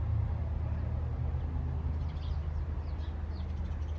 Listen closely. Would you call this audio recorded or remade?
recorded